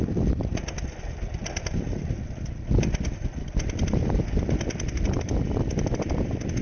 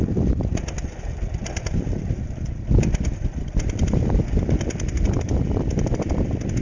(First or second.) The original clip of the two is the first